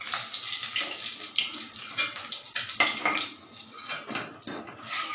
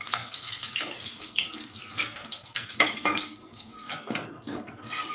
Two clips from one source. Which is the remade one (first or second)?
second